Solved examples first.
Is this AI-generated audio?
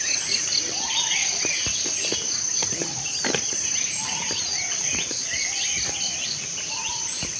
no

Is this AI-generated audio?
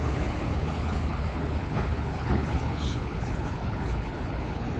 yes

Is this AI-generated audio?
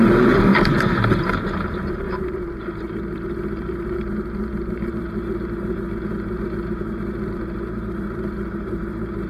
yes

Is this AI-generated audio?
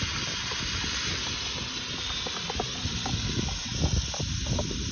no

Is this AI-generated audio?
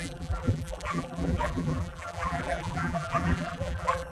yes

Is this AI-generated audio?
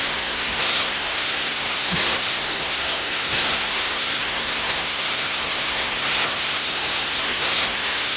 yes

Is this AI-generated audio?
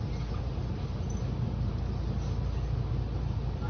no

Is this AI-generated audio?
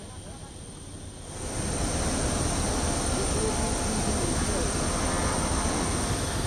no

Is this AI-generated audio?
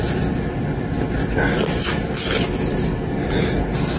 no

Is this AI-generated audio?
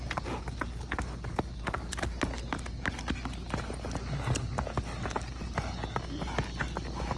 no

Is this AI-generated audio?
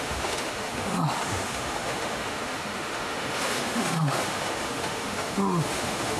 yes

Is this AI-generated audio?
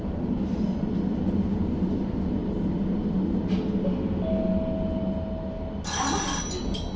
no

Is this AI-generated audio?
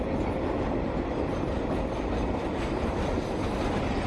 no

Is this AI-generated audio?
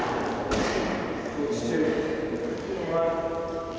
no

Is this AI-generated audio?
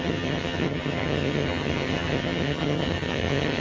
yes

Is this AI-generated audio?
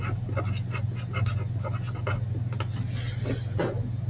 no